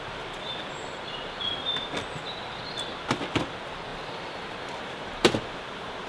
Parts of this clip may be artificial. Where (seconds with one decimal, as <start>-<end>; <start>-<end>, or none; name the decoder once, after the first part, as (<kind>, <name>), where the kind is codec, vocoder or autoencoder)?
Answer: 3.9-6.1 (vocoder, BigVGAN v2)